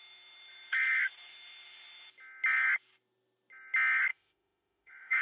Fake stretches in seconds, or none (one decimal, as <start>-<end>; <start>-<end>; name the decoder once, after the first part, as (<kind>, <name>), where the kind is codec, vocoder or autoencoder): 4.1-5.2 (autoencoder, DAC-VAE)